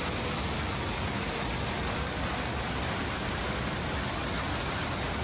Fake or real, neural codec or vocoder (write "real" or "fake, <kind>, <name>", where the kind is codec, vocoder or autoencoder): real